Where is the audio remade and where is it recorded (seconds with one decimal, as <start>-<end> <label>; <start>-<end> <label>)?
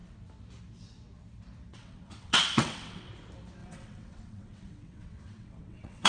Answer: 0.0-1.7 recorded; 1.7-3.1 remade; 3.1-3.6 recorded; 3.6-6.1 remade